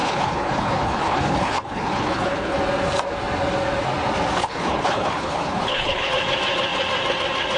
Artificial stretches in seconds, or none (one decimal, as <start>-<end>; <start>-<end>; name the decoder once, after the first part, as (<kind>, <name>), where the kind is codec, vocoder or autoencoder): 0.0-2.6 (codec, HILCodec); 4.4-6.1